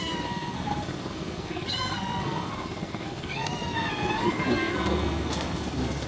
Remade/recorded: remade